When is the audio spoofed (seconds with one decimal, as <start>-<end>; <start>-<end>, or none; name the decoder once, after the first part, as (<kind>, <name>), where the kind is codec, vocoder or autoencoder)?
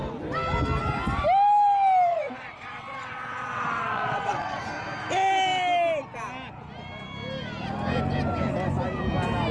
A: 2.1-4.6 (vocoder, WaveNeXt)